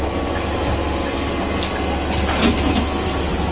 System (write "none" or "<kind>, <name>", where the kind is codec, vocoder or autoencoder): none